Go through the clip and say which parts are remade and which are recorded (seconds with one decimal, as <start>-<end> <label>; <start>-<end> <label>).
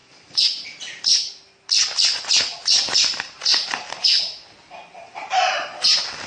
0.0-1.3 remade; 1.3-2.7 recorded; 2.7-6.3 remade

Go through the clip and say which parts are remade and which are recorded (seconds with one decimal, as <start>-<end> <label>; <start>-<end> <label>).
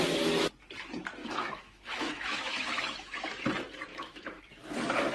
0.0-1.2 recorded; 1.2-3.4 remade; 3.4-3.9 recorded; 3.9-4.5 remade; 4.5-5.1 recorded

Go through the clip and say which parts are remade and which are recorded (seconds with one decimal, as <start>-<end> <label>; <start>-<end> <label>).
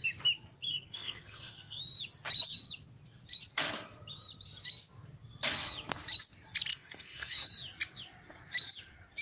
0.0-0.7 recorded; 0.7-1.8 remade; 1.8-6.7 recorded; 6.7-7.5 remade; 7.5-9.2 recorded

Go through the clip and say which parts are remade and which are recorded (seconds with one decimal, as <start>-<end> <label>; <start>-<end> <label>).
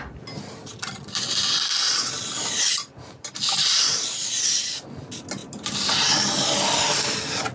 0.0-7.5 recorded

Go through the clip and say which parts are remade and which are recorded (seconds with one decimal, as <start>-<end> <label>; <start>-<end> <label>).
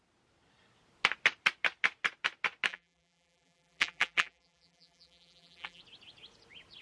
0.0-2.7 recorded; 2.7-5.8 remade; 5.8-6.8 recorded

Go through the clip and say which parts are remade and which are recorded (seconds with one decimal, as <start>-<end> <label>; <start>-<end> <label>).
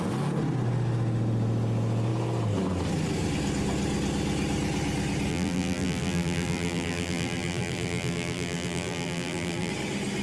0.0-5.3 recorded; 5.3-9.7 remade; 9.7-10.2 recorded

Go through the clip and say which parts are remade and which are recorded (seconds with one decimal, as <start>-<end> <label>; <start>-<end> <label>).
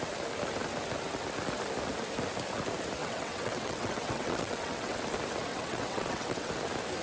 0.0-3.0 recorded; 3.0-5.0 remade; 5.0-5.5 recorded; 5.5-6.5 remade; 6.5-7.0 recorded